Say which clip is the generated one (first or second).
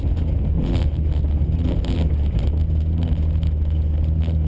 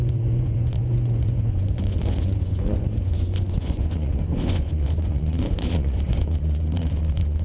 second